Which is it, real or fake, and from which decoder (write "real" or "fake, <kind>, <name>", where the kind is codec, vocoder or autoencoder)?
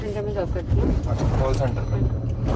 real